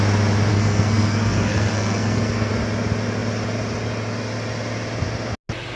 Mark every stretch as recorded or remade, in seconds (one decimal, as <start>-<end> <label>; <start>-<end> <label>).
0.0-0.5 recorded; 0.5-2.5 remade; 2.5-5.8 recorded